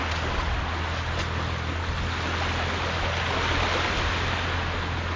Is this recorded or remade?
recorded